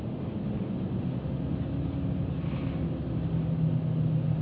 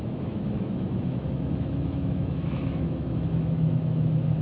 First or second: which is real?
first